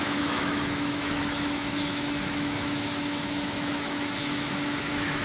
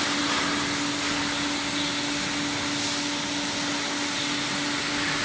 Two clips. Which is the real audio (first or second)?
second